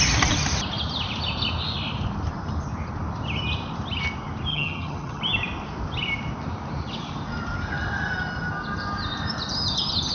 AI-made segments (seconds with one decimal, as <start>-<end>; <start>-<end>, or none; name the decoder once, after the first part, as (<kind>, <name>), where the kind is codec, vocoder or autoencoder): 4.5-5.2 (vocoder, HiFi-GAN)